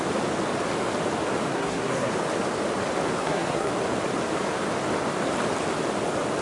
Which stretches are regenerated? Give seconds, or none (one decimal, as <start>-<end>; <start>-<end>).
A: 1.5-2.1; 3.2-3.7